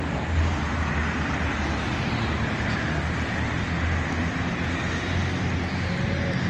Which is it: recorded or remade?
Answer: recorded